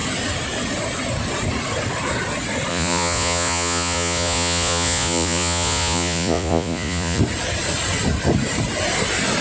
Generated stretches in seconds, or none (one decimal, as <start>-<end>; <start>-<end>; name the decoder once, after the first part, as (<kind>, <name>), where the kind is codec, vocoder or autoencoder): 2.7-7.2 (vocoder, Vocos)